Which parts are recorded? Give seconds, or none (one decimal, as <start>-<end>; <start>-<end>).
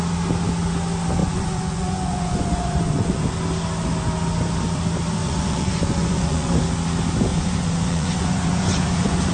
0.0-1.2; 3.2-5.2; 6.5-7.3